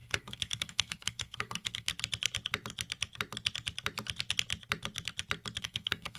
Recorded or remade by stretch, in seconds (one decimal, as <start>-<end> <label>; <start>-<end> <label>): 0.0-1.9 remade; 1.9-5.6 recorded; 5.6-6.2 remade